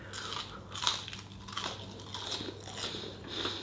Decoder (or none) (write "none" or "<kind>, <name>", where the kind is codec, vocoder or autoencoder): none